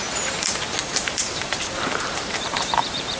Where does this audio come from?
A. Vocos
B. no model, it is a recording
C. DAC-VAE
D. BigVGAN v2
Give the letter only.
D